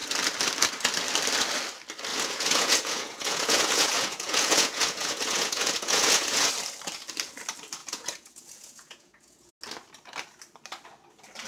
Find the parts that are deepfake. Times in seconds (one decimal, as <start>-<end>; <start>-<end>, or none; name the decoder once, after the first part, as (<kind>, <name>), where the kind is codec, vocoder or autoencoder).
2.1-6.5 (vocoder, Vocos); 7.8-9.5